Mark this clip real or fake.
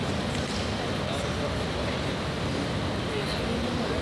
real